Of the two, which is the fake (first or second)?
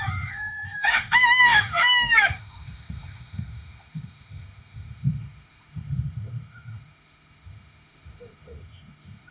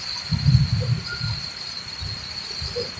first